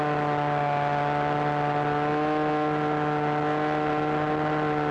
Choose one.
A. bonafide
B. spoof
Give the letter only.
A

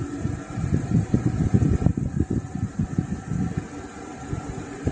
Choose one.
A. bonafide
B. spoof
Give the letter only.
B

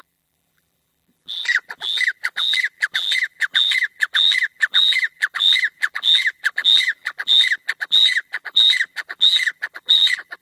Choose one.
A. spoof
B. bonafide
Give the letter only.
A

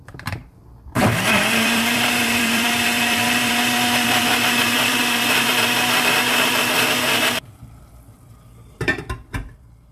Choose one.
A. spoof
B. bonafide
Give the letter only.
A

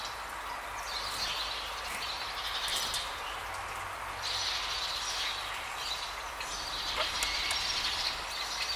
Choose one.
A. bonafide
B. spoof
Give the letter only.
A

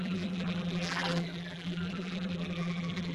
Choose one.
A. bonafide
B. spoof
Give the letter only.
B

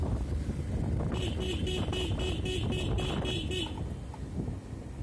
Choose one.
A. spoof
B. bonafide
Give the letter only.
B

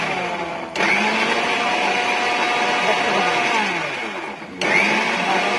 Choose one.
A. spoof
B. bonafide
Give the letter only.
B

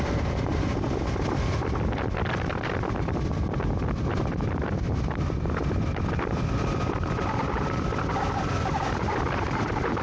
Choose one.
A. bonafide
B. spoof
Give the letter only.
B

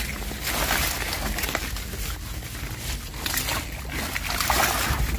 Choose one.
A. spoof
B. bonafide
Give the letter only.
B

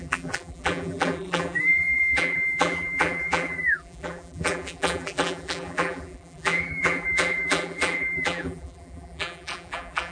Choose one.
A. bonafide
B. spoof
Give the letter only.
B